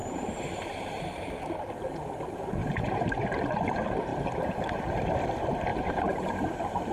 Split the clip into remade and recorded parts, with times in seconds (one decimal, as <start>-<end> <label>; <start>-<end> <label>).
0.0-1.5 remade; 1.5-2.6 recorded; 2.6-3.1 remade; 3.1-4.1 recorded; 4.1-4.8 remade; 4.8-5.7 recorded; 5.7-6.9 remade